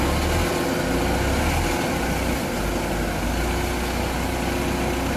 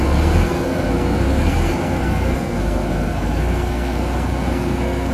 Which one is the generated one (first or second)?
second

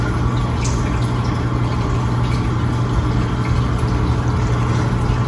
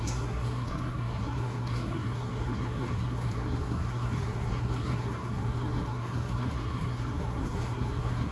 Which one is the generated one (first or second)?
second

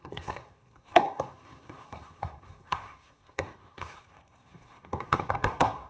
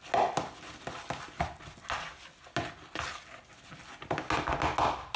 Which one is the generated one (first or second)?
first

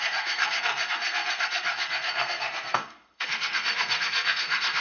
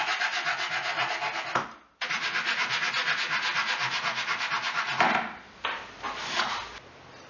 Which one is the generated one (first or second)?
first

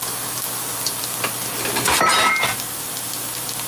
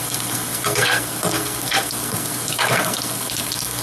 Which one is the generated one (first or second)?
second